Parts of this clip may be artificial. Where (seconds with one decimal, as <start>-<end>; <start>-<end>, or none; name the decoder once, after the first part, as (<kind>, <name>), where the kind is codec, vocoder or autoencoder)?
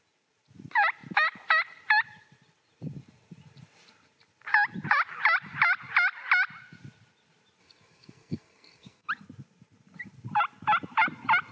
7.6-9.1 (codec, SNAC)